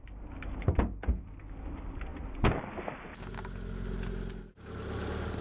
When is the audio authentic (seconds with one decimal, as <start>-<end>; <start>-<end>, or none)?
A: 0.0-5.4